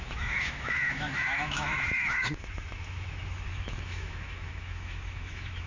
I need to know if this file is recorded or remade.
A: remade